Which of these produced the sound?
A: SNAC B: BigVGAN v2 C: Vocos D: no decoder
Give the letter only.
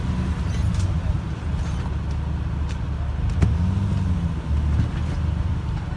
D